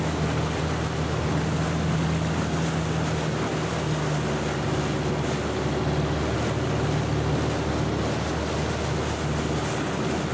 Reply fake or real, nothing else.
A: real